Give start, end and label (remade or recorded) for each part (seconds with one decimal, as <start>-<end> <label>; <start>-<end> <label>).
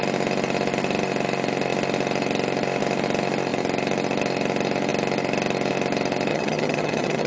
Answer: 0.0-6.3 recorded; 6.3-7.3 remade